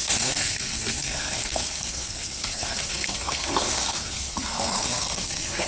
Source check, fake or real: fake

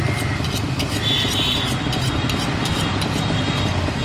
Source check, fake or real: real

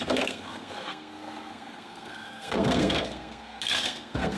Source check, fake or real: fake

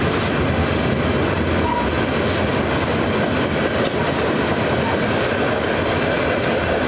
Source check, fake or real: real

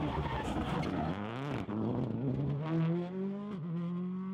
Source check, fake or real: real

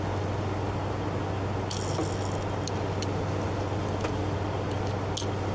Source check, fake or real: real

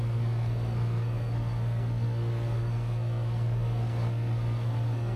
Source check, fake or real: fake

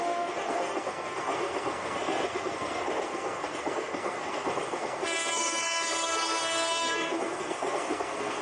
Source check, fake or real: fake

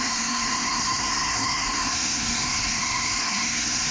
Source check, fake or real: fake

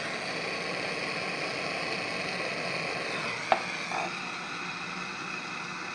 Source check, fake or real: real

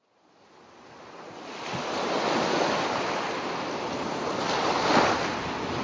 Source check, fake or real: real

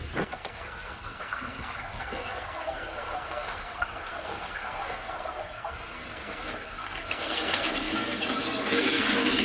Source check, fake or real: fake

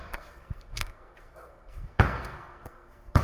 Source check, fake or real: fake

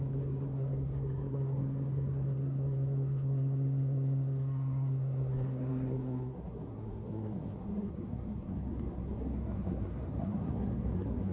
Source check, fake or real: fake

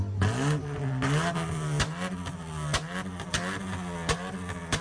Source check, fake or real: real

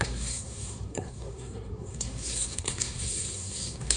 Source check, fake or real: fake